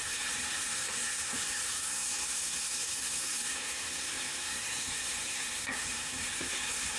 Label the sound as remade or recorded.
remade